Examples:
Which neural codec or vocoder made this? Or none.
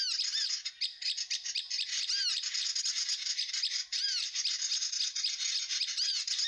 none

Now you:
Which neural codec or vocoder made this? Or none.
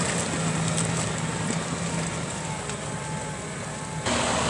none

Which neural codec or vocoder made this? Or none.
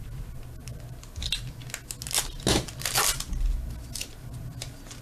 none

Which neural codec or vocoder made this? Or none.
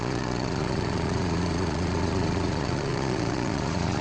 vocoder, Vocos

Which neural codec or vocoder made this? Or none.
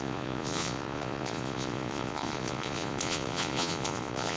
vocoder, Vocos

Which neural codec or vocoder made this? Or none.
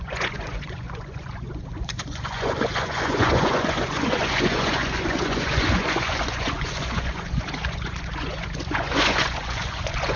vocoder, Vocos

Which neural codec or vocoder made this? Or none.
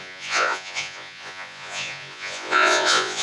vocoder, Vocos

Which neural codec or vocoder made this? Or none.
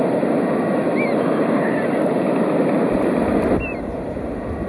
none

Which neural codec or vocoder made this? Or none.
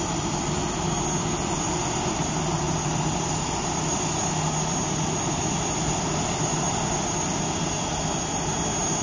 none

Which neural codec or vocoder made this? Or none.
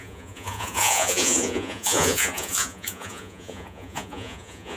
vocoder, Vocos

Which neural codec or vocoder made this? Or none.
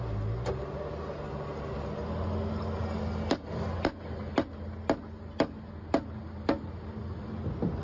none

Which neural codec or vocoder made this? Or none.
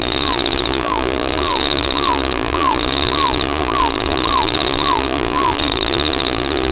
vocoder, Vocos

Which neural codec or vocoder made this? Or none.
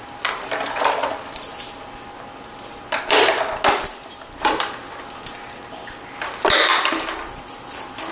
none